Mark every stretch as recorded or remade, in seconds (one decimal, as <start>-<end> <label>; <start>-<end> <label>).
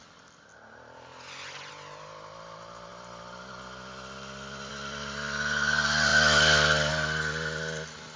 0.0-8.2 recorded